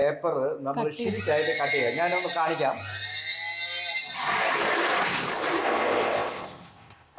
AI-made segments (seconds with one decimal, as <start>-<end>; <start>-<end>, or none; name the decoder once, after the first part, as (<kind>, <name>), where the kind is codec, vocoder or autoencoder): 5.6-7.2 (codec, ZipCodec)